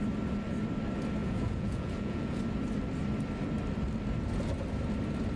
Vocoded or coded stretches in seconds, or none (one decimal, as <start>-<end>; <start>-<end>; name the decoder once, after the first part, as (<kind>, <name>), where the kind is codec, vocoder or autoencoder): 1.2-2.4 (vocoder, Vocos)